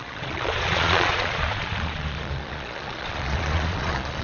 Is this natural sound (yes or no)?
no